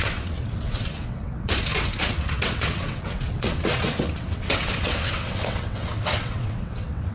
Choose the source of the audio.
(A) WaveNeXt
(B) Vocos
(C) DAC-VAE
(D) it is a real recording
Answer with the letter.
A